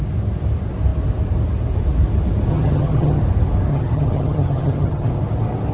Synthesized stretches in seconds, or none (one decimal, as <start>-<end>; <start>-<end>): 2.5-3.2; 3.7-5.1